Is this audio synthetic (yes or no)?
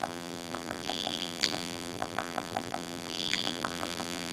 yes